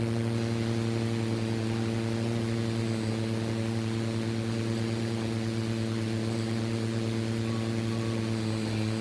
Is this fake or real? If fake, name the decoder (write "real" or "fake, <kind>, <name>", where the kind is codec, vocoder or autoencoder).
real